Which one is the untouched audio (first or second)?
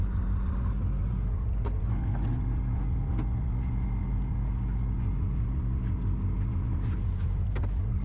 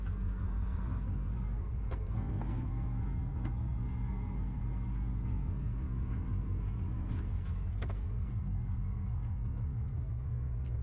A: first